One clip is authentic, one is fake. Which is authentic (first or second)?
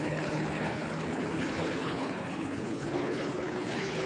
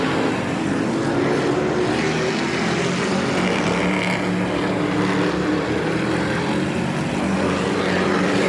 second